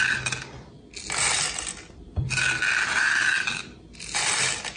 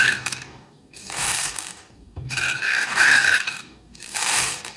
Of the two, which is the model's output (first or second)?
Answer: second